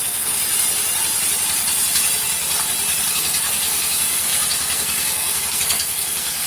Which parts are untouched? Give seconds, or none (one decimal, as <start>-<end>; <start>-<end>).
0.4-3.1